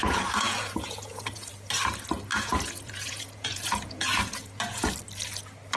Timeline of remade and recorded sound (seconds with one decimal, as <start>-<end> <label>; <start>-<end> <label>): 0.0-1.5 remade; 1.5-2.3 recorded; 2.3-4.9 remade; 4.9-5.8 recorded